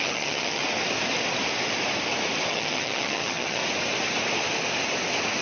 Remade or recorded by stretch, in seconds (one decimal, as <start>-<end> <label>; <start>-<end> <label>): 0.0-0.6 remade; 0.6-2.5 recorded; 2.5-3.6 remade; 3.6-5.4 recorded